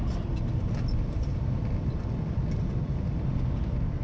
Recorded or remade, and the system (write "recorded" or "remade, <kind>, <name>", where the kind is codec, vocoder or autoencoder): remade, vocoder, BigVGAN v2